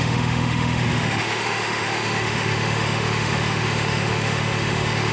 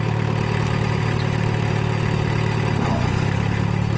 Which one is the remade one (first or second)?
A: first